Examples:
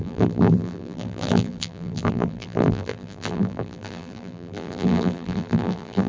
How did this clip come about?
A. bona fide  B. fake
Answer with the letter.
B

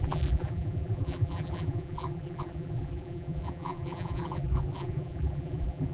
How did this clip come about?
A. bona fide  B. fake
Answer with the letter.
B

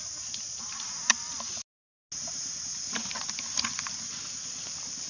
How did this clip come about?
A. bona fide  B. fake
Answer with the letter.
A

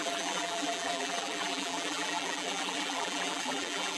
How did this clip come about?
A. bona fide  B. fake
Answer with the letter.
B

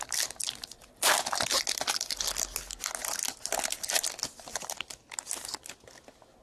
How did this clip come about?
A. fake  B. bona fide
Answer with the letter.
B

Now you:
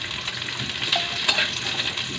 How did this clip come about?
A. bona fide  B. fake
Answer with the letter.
A